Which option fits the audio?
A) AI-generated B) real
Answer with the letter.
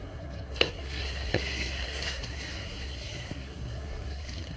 A